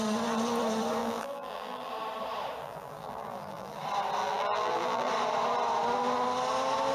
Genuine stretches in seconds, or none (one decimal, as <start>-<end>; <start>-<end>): 0.0-1.0; 1.9-2.6; 3.8-4.2; 5.1-6.9

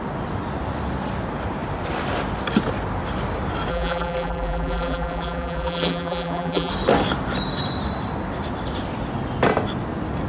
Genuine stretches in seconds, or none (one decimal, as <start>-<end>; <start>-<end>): 0.0-3.7; 6.7-10.3

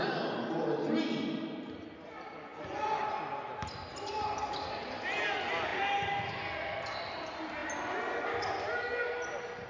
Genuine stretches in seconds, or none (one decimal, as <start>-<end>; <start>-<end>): 0.0-9.7

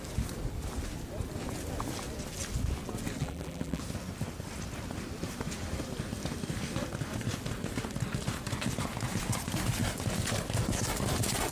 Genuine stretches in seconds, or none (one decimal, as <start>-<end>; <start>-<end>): 0.0-3.2; 3.8-11.5

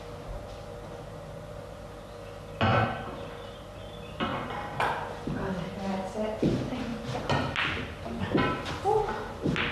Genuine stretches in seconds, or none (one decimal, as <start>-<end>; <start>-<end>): 0.0-2.7; 3.8-6.9; 8.4-9.7

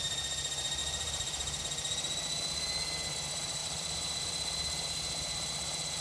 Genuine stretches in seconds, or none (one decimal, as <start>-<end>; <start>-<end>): 0.0-0.8; 1.6-3.6; 5.0-6.0

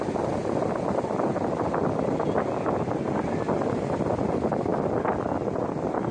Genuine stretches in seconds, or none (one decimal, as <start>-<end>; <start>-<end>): 0.0-6.1

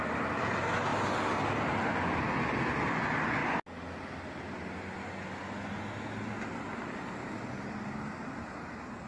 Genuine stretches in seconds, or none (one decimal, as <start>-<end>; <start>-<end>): 0.0-9.1